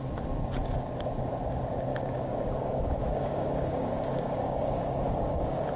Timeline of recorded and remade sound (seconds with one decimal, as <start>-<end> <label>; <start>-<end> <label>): 0.0-1.9 recorded; 1.9-5.8 remade